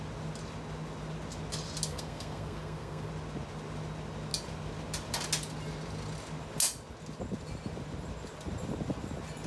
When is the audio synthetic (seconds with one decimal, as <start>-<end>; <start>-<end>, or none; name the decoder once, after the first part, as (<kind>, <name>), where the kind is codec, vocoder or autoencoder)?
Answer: 1.9-3.1 (codec, SNAC)